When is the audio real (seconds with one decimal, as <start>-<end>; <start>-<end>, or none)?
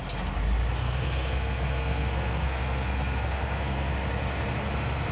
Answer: 0.0-0.8; 3.9-5.1